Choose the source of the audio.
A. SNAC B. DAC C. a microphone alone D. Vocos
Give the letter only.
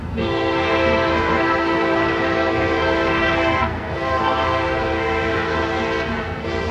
A